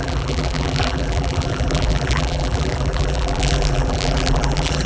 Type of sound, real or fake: fake